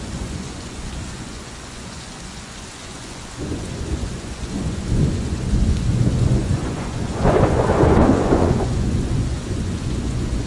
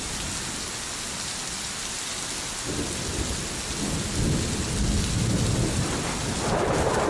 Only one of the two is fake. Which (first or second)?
first